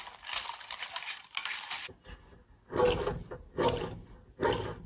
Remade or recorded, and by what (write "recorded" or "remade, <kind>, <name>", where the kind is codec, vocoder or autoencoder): recorded